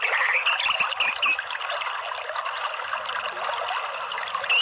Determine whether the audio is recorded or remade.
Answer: recorded